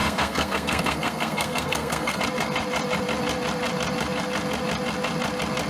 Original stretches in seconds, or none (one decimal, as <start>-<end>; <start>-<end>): 2.2-5.7

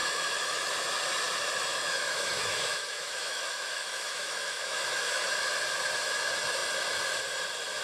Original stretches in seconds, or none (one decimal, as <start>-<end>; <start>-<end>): 0.7-1.7; 5.3-7.8

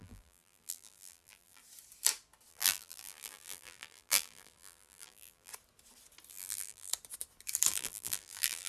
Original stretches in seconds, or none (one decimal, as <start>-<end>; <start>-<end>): 1.6-2.5; 5.5-6.3; 6.9-7.7